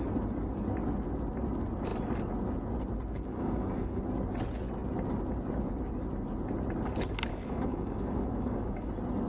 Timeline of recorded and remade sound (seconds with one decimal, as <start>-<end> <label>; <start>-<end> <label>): 0.0-3.3 recorded; 3.3-4.0 remade; 4.0-7.3 recorded; 7.3-8.9 remade; 8.9-9.3 recorded